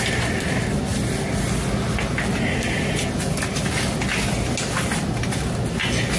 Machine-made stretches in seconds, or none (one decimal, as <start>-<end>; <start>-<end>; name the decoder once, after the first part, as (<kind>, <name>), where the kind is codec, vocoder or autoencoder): none